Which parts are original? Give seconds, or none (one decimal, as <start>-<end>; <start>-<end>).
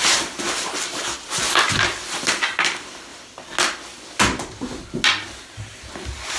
0.0-6.4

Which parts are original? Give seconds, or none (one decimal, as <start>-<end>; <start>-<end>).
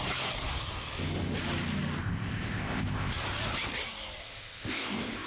0.0-2.0; 3.1-4.2